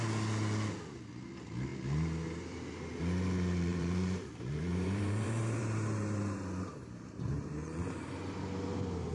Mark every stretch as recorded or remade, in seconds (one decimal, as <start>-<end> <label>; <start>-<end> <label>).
0.0-3.7 recorded; 3.7-7.8 remade; 7.8-9.1 recorded